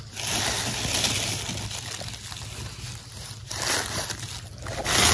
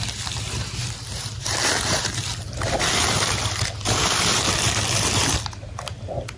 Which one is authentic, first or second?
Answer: first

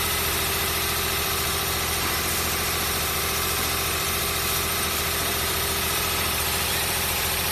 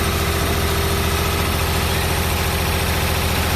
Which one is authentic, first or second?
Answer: second